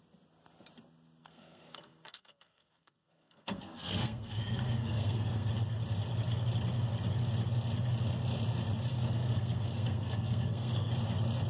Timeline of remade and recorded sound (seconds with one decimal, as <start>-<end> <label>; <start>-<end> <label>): 0.0-1.2 recorded; 1.2-5.5 remade; 5.5-8.9 recorded; 8.9-10.9 remade; 10.9-11.5 recorded